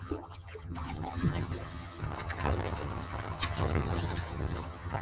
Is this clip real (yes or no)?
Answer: no